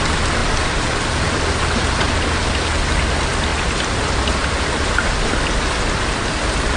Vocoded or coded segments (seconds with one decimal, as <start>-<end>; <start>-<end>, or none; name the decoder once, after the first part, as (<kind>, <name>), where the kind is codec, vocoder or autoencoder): none